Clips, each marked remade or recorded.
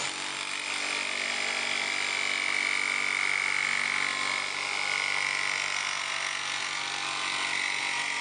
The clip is recorded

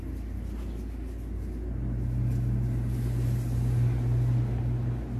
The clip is recorded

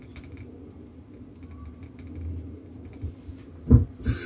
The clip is recorded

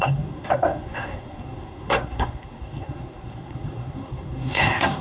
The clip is remade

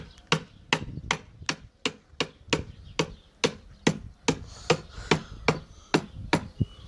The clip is recorded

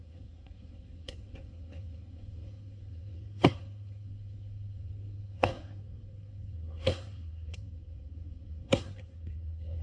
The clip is remade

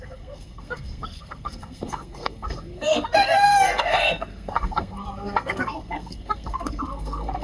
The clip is remade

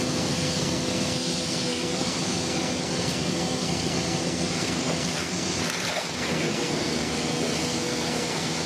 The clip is remade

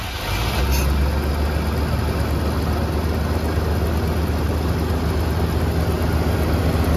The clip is recorded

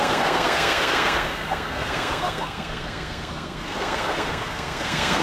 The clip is remade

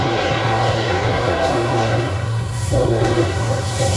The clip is remade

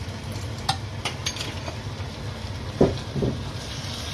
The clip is recorded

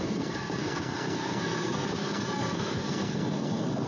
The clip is remade